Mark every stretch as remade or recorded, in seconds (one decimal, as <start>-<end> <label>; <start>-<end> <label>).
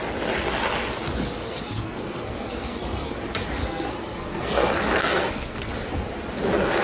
0.0-1.4 recorded; 1.4-3.2 remade; 3.2-3.6 recorded; 3.6-5.7 remade; 5.7-6.8 recorded